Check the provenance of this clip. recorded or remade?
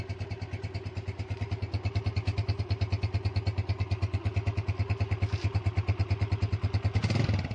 recorded